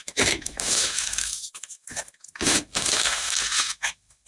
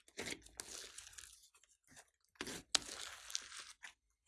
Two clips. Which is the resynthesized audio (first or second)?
first